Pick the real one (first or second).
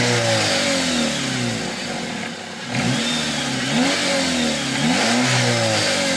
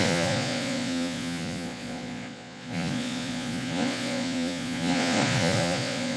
first